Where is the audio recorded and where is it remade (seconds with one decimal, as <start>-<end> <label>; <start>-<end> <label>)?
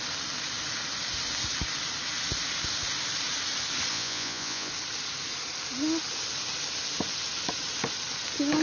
0.0-3.9 recorded; 3.9-4.7 remade; 4.7-8.6 recorded